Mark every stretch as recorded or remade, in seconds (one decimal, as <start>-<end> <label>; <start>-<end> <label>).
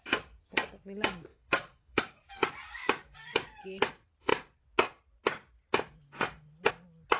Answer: 0.0-1.3 recorded; 1.3-2.3 remade; 2.3-7.2 recorded